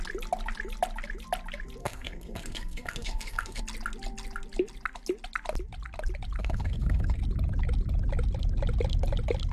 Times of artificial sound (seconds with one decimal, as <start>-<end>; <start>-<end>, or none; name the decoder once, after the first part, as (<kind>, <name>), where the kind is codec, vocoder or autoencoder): 1.8-3.6 (codec, SNAC); 6.4-7.2